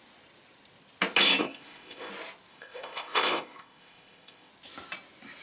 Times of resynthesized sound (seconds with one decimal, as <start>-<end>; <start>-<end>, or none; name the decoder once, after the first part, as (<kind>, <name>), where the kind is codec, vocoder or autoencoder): 1.4-2.1 (codec, ZipCodec); 2.5-4.5